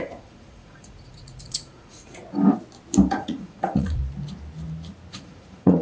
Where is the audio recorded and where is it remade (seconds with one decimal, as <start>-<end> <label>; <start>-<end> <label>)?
0.0-2.2 remade; 2.2-3.1 recorded; 3.1-4.0 remade; 4.0-5.1 recorded; 5.1-5.8 remade